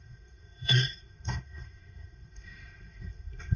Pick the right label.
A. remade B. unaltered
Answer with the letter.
A